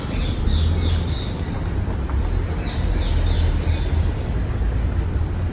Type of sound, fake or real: real